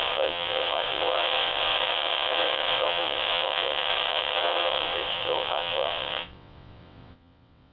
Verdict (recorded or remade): remade